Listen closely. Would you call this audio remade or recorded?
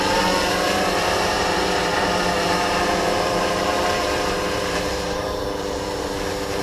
remade